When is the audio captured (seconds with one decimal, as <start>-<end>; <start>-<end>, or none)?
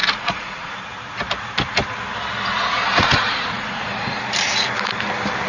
0.7-2.5; 4.2-5.5